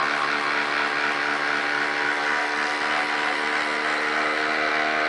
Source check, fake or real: real